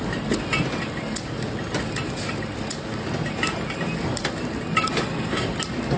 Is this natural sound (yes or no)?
yes